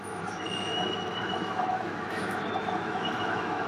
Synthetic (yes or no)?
yes